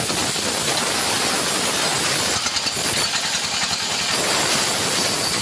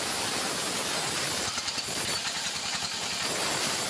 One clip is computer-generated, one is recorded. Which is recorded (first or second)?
first